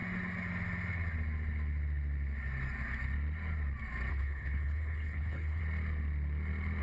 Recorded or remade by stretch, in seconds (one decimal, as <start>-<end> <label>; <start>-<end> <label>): 0.0-4.1 recorded; 4.1-5.6 remade; 5.6-6.8 recorded